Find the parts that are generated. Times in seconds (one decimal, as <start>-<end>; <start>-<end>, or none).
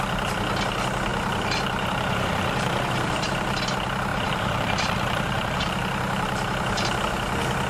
1.1-3.6; 4.1-7.0